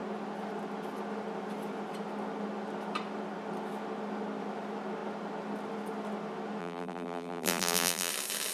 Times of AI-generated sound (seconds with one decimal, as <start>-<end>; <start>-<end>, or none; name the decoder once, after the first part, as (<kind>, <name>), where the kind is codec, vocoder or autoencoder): 6.6-8.1 (vocoder, BigVGAN v2)